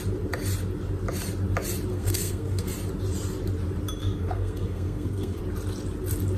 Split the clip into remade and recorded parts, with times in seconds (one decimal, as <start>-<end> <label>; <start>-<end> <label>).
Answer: 0.0-1.9 recorded; 1.9-2.7 remade; 2.7-4.0 recorded; 4.0-5.4 remade; 5.4-6.4 recorded